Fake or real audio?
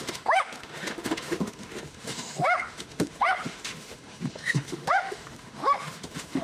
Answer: fake